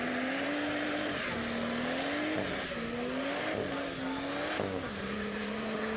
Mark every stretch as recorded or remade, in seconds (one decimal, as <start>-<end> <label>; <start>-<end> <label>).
0.0-1.4 remade; 1.4-5.0 recorded; 5.0-6.0 remade